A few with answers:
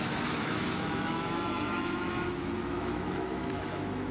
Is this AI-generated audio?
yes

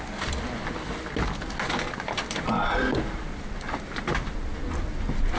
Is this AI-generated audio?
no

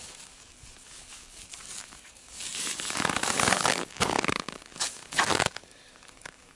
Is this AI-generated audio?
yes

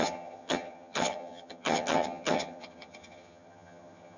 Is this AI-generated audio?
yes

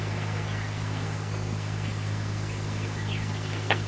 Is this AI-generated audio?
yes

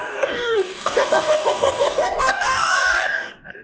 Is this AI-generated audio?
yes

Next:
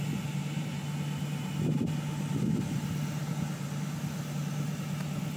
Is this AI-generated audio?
no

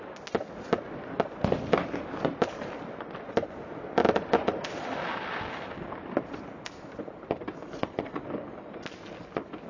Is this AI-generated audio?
no